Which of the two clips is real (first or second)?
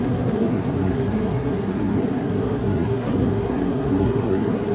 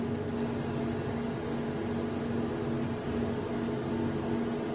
second